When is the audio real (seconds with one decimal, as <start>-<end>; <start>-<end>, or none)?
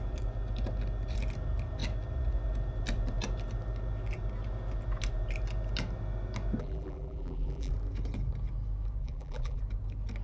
0.0-6.6; 7.7-9.0; 9.6-10.2